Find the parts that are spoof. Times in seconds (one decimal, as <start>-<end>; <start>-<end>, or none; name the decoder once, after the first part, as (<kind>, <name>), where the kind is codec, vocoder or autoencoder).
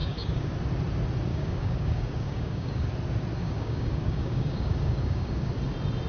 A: 0.0-0.5 (codec, DAC); 1.3-2.9; 3.4-5.5